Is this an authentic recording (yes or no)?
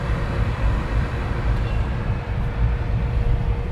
no